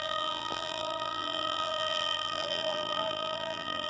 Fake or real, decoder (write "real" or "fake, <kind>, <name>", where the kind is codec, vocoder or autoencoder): fake, vocoder, BigVGAN v2